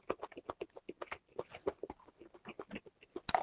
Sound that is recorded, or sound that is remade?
recorded